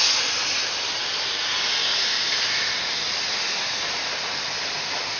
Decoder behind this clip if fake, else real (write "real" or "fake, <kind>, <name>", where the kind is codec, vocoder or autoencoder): real